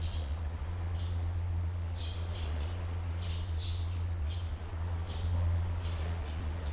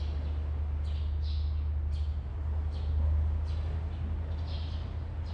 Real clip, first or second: second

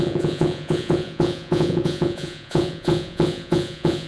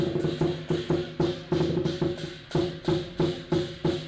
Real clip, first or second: second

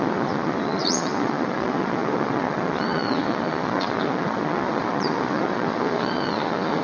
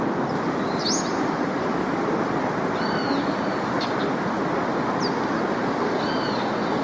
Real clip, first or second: second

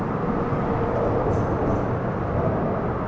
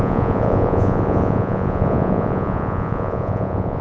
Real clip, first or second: first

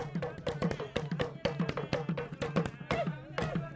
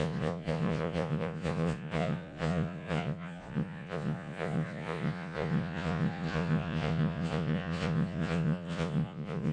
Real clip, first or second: first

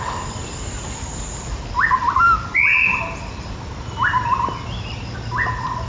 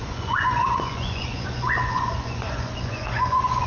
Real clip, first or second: first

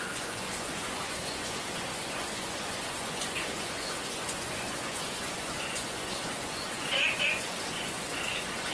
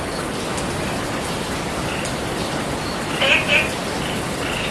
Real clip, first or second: second